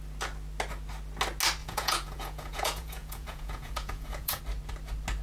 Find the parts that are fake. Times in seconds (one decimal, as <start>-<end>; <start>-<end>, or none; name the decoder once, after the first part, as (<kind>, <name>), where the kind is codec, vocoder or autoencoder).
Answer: 1.6-4.4 (vocoder, Vocos)